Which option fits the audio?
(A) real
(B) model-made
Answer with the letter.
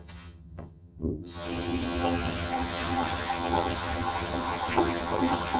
B